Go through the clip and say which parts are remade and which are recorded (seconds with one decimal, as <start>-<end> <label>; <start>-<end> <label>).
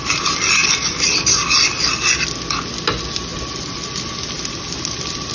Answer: 0.0-3.3 recorded; 3.3-4.0 remade; 4.0-5.3 recorded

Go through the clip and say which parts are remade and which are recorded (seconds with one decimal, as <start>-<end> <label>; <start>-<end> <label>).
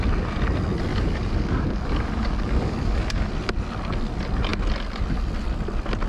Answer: 0.0-0.9 recorded; 0.9-3.3 remade; 3.3-6.1 recorded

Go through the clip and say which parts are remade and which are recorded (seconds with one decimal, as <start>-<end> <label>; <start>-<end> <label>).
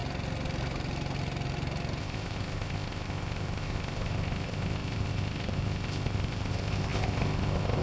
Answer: 0.0-2.0 recorded; 2.0-7.8 remade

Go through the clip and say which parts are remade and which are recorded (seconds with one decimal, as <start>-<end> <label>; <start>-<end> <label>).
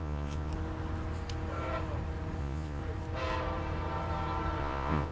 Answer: 0.0-0.5 remade; 0.5-2.4 recorded; 2.4-2.8 remade; 2.8-4.6 recorded; 4.6-5.1 remade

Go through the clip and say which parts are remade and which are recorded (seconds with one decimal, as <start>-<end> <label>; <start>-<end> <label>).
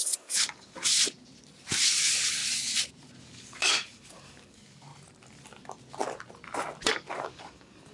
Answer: 0.0-0.9 remade; 0.9-2.0 recorded; 2.0-2.4 remade; 2.4-3.2 recorded; 3.2-4.9 remade; 4.9-6.9 recorded; 6.9-7.9 remade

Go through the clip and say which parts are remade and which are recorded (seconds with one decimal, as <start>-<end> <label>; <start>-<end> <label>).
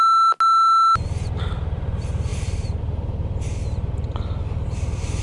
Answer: 0.0-2.3 recorded; 2.3-2.8 remade; 2.8-5.2 recorded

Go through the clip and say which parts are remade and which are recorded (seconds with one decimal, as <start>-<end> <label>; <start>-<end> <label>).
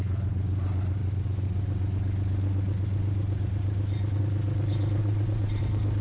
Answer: 0.0-5.0 recorded; 5.0-5.6 remade; 5.6-6.0 recorded